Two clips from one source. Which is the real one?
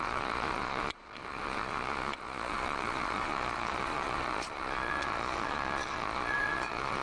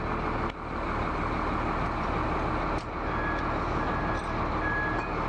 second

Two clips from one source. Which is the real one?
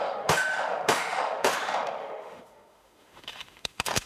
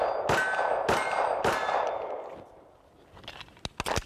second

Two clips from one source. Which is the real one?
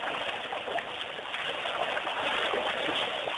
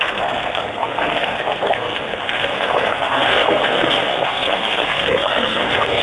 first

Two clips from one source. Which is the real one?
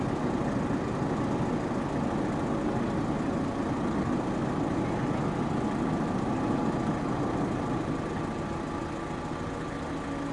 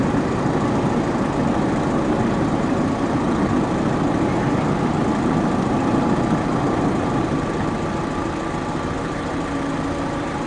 first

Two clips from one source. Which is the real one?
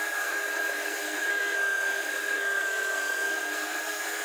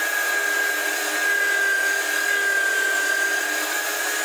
second